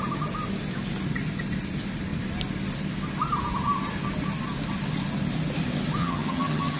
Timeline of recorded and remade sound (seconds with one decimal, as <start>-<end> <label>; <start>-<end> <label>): 0.0-6.0 recorded; 6.0-6.8 remade